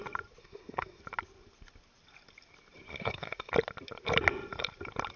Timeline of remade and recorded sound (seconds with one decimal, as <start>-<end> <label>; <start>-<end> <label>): 0.0-0.4 recorded; 0.4-1.0 remade; 1.0-2.9 recorded; 2.9-3.5 remade; 3.5-5.2 recorded